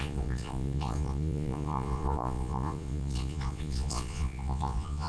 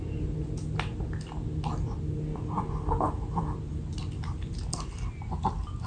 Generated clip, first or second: first